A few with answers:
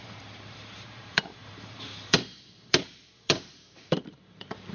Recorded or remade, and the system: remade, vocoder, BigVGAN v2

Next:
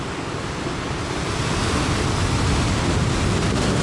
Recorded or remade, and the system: recorded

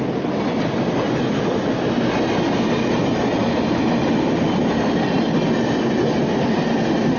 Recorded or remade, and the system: recorded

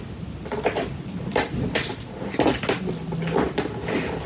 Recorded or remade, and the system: recorded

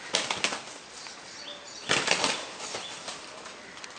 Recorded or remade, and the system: recorded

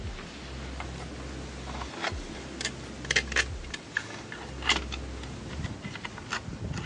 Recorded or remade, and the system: recorded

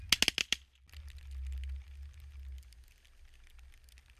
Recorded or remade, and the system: recorded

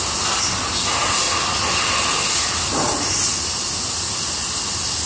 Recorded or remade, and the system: recorded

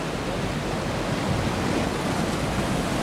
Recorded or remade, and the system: recorded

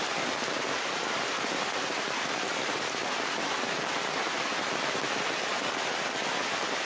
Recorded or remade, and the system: remade, vocoder, BigVGAN v2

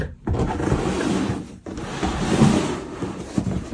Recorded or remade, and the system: remade, vocoder, BigVGAN v2